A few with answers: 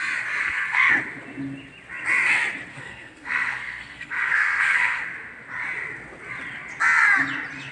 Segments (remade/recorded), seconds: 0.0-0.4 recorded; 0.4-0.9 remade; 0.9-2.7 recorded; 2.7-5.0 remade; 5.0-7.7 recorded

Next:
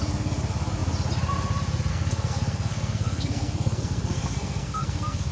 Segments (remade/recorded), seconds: 0.0-1.9 recorded; 1.9-5.3 remade

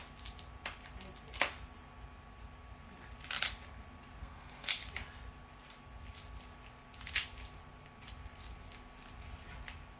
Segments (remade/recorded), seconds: 0.0-4.2 recorded; 4.2-4.7 remade; 4.7-10.0 recorded

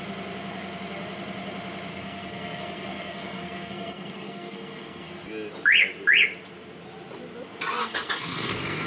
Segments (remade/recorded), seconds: 0.0-1.9 recorded; 1.9-5.1 remade; 5.1-7.8 recorded; 7.8-8.9 remade